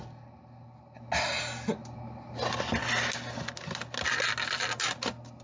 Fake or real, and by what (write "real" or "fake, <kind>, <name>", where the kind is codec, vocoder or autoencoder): real